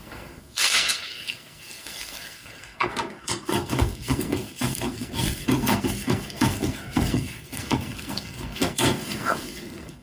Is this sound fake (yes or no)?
yes